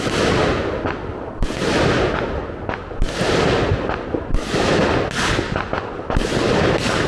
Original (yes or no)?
yes